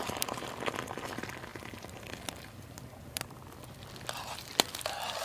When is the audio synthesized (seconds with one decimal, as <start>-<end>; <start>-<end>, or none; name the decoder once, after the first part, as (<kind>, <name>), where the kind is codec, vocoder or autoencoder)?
1.5-3.9 (vocoder, BigVGAN v2)